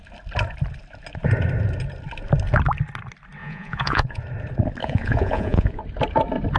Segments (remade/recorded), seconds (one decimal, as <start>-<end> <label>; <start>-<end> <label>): 0.0-3.4 recorded; 3.4-4.2 remade; 4.2-4.8 recorded; 4.8-5.8 remade; 5.8-6.6 recorded